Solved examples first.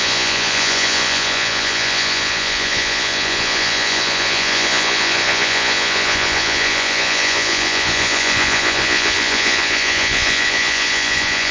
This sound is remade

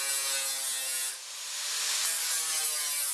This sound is recorded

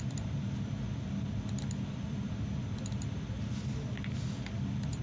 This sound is recorded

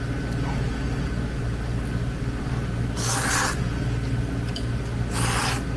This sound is recorded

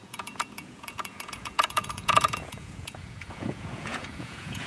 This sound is remade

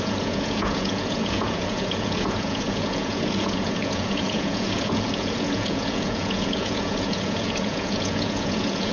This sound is remade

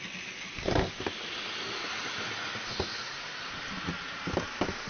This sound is recorded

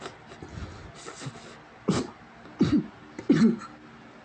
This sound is recorded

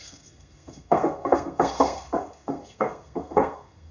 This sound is remade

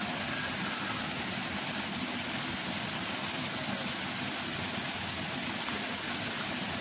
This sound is recorded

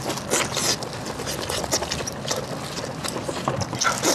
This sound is recorded